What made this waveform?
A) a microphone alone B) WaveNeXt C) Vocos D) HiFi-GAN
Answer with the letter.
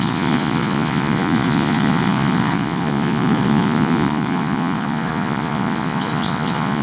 C